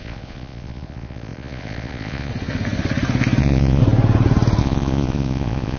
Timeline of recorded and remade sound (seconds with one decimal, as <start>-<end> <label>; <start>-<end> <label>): 0.0-2.3 remade; 2.3-3.4 recorded; 3.4-3.8 remade; 3.8-4.6 recorded; 4.6-5.8 remade